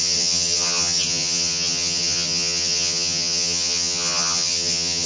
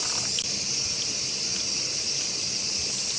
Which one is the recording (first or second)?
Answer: second